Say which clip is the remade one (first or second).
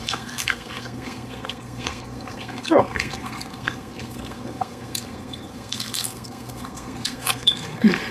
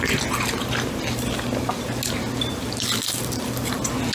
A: first